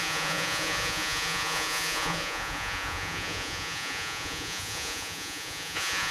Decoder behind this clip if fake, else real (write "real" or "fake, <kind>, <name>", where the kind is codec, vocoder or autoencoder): fake, vocoder, Vocos